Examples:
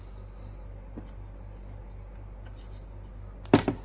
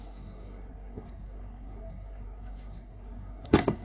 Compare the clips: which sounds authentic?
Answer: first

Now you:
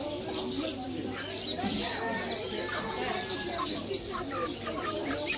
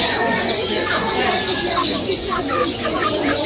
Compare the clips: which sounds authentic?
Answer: first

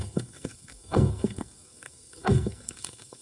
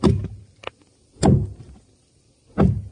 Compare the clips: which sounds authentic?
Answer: second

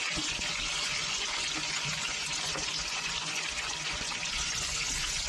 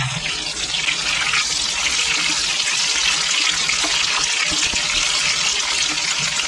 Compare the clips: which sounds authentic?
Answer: second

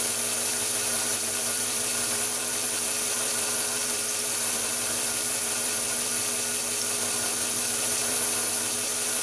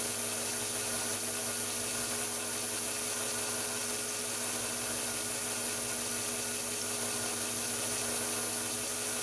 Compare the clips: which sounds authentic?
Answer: second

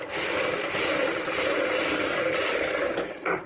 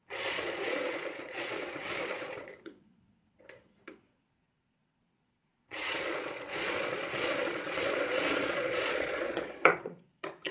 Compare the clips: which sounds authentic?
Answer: first